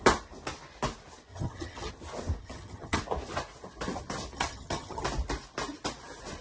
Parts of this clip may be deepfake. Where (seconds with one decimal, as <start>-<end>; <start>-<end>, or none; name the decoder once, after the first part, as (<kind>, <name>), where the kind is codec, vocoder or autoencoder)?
1.3-1.9 (vocoder, HiFi-GAN); 2.4-3.0; 4.3-5.0